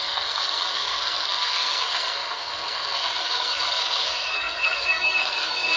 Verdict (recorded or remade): remade